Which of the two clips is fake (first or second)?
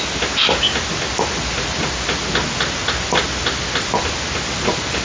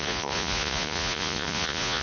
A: second